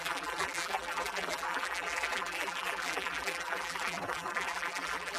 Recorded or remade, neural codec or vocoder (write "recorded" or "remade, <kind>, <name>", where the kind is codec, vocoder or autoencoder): remade, vocoder, BigVGAN v2